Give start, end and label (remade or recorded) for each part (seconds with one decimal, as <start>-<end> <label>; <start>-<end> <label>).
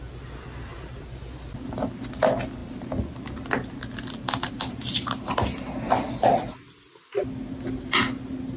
0.0-8.6 recorded